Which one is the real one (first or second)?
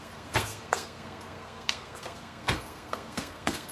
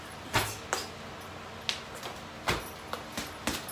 second